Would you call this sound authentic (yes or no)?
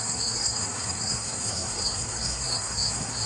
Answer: no